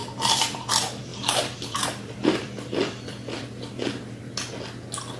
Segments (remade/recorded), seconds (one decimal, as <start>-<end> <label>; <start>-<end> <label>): 0.0-0.7 remade; 0.7-1.1 recorded; 1.1-4.2 remade; 4.2-5.2 recorded